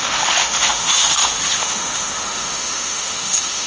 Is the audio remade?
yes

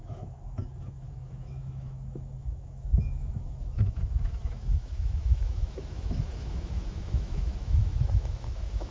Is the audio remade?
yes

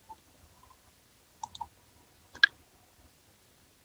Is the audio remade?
no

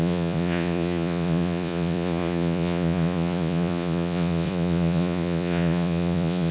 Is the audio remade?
yes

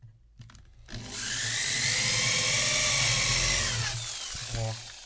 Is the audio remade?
no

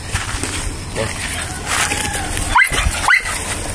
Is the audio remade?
no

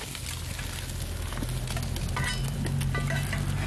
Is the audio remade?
no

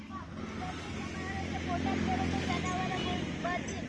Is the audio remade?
no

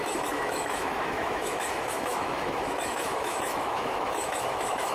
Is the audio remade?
yes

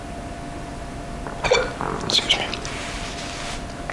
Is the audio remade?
no